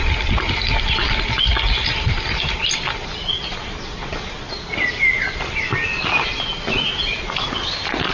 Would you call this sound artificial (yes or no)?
no